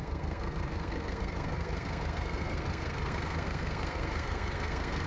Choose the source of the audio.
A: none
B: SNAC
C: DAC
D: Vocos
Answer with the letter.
B